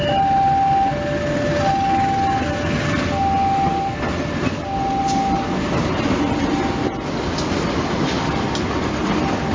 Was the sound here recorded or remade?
recorded